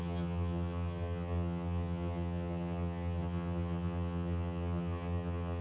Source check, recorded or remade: remade